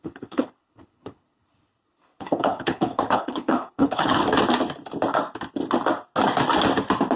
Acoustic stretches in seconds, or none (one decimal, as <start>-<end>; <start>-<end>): 4.2-7.2